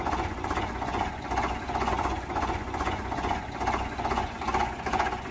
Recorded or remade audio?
remade